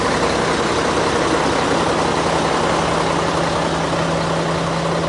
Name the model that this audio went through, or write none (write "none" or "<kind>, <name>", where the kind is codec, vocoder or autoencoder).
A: none